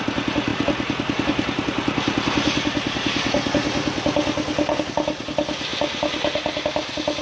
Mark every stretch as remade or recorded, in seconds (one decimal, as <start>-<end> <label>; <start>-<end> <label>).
0.0-7.2 recorded